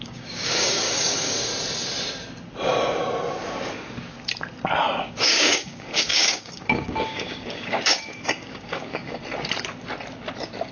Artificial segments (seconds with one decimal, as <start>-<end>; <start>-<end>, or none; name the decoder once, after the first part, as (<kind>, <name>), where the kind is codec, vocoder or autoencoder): 0.0-1.5 (codec, DAC); 5.0-9.2